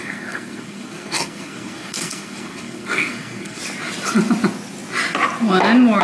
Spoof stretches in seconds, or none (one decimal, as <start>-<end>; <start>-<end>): 0.0-3.6